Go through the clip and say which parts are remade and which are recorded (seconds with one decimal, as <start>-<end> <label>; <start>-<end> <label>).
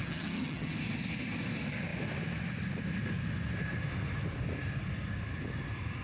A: 0.0-0.7 remade; 0.7-6.0 recorded